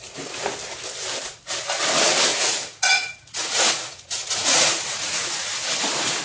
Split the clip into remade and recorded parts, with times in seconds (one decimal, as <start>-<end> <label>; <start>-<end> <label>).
0.0-2.3 recorded; 2.3-6.2 remade